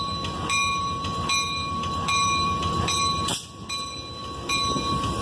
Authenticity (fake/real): fake